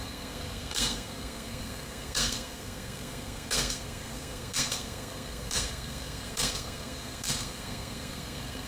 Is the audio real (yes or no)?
no